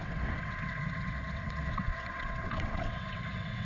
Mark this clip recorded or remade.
remade